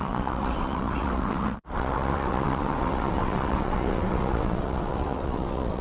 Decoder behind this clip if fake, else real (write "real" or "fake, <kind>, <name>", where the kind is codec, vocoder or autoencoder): fake, vocoder, WaveNeXt